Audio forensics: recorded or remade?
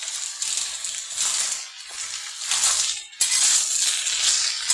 recorded